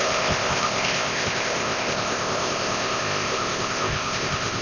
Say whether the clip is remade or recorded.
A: remade